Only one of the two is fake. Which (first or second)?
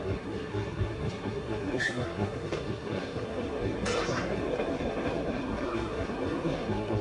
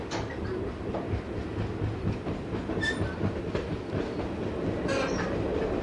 first